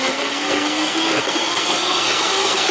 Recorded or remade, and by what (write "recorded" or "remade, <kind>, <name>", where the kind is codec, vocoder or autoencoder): remade, codec, SNAC